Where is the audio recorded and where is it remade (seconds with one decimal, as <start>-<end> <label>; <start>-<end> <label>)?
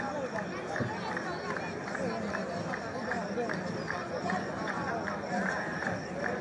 0.0-4.0 recorded; 4.0-4.9 remade; 4.9-6.4 recorded